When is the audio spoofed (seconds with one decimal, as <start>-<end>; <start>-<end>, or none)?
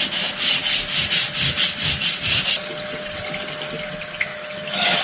4.3-5.0